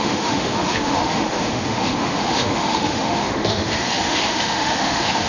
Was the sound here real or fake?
fake